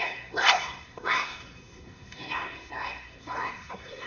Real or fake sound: fake